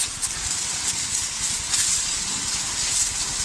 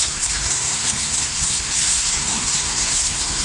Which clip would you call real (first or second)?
first